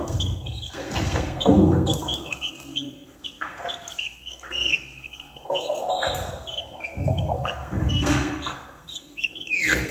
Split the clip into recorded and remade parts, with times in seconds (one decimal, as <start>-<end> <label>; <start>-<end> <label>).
0.0-9.9 remade